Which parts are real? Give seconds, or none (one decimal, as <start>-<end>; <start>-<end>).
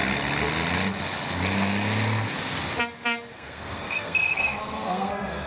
0.0-3.3